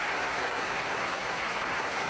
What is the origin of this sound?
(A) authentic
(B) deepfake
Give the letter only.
B